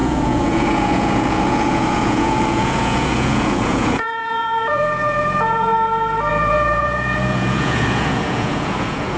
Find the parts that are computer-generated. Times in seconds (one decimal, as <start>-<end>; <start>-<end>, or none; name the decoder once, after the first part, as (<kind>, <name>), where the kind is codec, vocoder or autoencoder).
0.0-5.7 (vocoder, Vocos); 6.3-9.2